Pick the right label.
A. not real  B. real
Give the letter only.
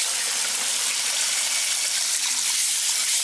B